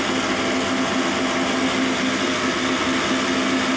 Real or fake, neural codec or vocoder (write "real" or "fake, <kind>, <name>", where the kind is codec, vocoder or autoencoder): real